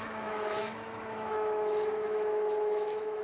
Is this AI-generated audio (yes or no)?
yes